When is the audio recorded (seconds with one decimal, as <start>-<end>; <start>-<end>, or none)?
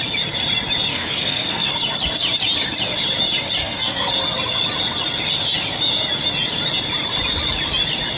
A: 0.0-0.9; 1.7-3.6; 4.1-8.2